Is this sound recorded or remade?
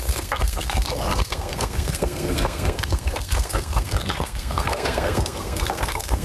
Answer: remade